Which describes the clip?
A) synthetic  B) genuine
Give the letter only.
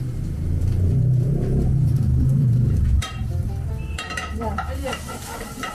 A